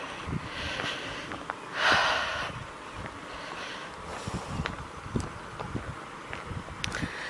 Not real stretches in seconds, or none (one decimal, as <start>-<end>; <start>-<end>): none